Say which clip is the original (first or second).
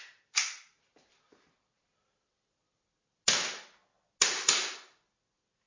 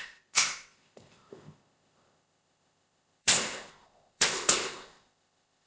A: first